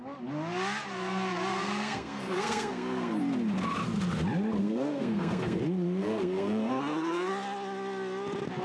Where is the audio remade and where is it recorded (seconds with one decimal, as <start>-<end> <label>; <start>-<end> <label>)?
0.0-1.5 recorded; 1.5-3.2 remade; 3.2-4.6 recorded; 4.6-5.6 remade; 5.6-6.0 recorded; 6.0-7.3 remade; 7.3-8.6 recorded